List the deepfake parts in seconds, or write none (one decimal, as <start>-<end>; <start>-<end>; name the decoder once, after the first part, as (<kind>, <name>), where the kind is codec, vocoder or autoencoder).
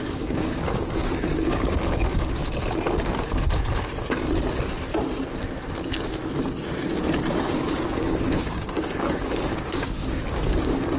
0.0-2.4 (codec, DAC); 7.3-11.0